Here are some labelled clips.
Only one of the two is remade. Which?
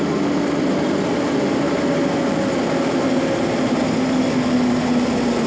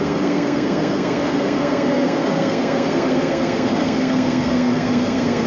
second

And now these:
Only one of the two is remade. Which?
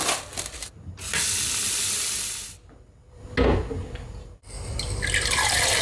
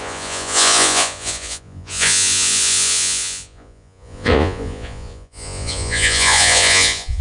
second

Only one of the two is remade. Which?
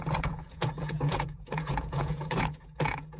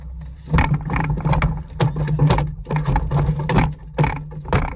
first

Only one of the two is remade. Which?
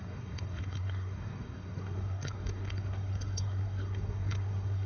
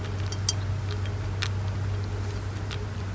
first